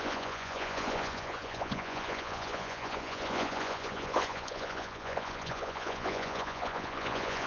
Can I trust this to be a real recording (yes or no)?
no